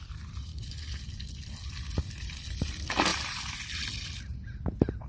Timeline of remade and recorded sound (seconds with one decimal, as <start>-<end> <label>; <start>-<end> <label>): 0.0-0.5 recorded; 0.5-1.0 remade; 1.0-5.1 recorded